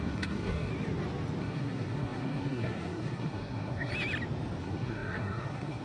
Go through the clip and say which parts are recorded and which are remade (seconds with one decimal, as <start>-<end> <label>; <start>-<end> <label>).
0.0-0.7 remade; 0.7-1.4 recorded; 1.4-3.9 remade; 3.9-4.6 recorded; 4.6-5.8 remade